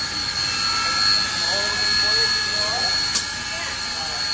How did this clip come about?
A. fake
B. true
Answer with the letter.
B